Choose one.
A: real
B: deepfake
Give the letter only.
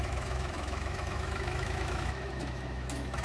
B